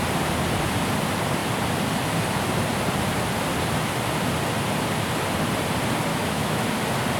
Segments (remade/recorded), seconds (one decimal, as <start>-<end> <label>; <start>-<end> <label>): 0.0-6.1 recorded; 6.1-6.6 remade; 6.6-7.2 recorded